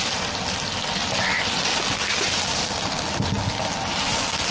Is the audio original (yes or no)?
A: yes